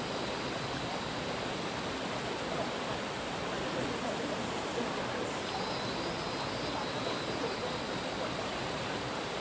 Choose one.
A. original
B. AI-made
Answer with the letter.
A